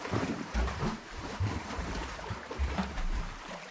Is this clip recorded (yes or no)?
no